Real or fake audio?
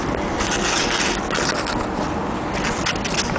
real